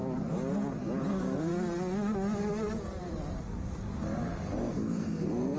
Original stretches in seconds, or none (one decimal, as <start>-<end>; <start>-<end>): 0.0-1.1; 1.5-4.6